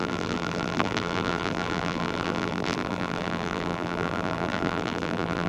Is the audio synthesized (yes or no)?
yes